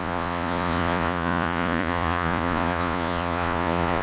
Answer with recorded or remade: remade